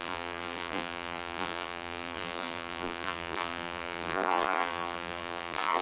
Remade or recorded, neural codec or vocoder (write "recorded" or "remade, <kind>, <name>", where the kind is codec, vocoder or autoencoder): remade, vocoder, BigVGAN v2